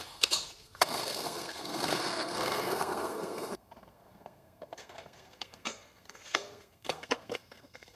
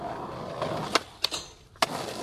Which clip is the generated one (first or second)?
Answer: first